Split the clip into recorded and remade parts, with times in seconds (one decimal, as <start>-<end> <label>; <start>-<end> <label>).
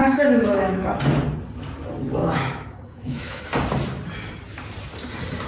0.0-0.9 remade; 0.9-2.2 recorded; 2.2-3.4 remade; 3.4-5.5 recorded